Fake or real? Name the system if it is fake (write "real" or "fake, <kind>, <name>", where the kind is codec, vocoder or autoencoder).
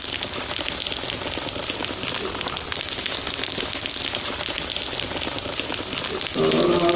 real